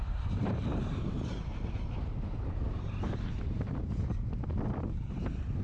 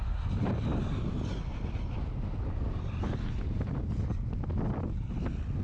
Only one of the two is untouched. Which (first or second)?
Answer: second